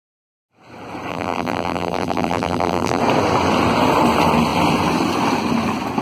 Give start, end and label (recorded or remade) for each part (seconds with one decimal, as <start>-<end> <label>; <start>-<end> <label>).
0.0-1.1 recorded; 1.1-3.0 remade; 3.0-6.0 recorded